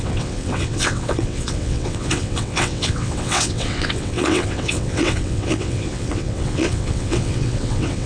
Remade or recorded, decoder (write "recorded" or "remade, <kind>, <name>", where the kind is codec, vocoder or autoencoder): remade, vocoder, WaveNeXt